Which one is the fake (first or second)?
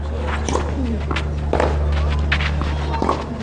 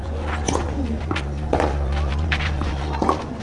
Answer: second